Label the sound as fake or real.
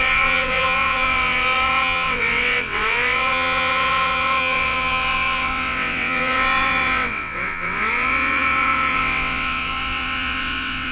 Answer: fake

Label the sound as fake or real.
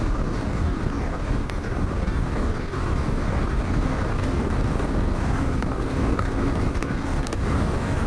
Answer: fake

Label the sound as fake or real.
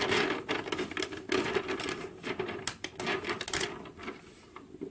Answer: real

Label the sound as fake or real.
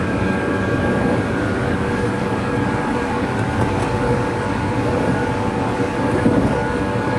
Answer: fake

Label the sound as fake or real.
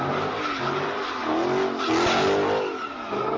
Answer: real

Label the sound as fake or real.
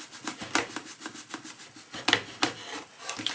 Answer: real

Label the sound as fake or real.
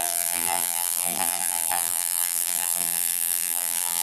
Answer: fake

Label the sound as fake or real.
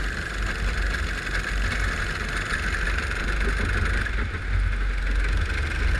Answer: real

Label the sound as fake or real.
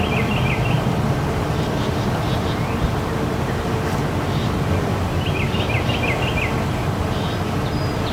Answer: real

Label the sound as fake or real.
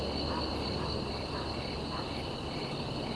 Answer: real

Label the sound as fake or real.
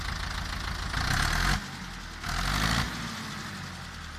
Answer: real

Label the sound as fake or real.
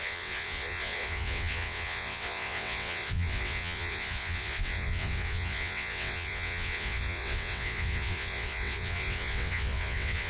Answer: fake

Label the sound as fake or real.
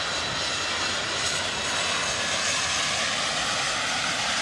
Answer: real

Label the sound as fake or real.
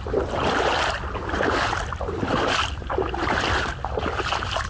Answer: real